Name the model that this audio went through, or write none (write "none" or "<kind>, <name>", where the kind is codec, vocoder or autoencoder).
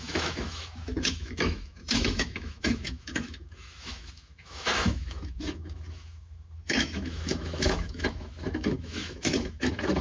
autoencoder, DAC-VAE